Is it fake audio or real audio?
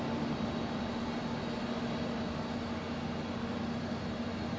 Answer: real